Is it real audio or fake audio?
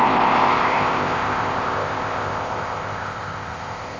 fake